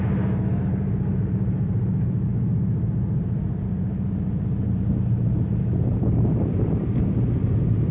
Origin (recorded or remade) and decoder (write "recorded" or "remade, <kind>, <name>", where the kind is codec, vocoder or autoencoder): recorded